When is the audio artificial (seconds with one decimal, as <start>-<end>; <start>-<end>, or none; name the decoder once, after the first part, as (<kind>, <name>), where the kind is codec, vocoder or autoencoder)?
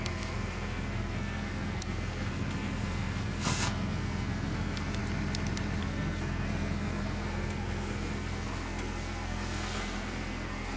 0.0-5.0 (codec, SNAC); 5.8-10.8